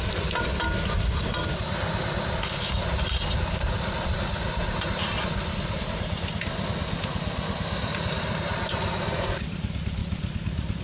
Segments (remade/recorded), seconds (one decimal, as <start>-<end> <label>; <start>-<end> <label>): 0.0-1.4 recorded; 1.4-5.9 remade; 5.9-10.0 recorded; 10.0-10.8 remade